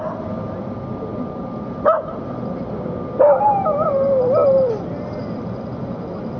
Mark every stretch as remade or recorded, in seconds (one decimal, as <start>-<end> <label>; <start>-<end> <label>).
0.0-6.4 recorded